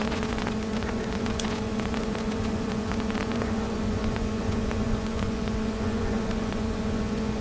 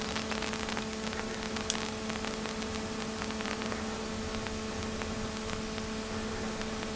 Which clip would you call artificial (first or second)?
first